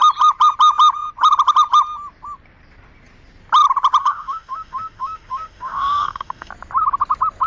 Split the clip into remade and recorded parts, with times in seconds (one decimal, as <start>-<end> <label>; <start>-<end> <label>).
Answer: 0.0-4.0 recorded; 4.0-6.5 remade; 6.5-7.5 recorded